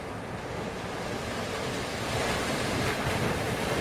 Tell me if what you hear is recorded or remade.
recorded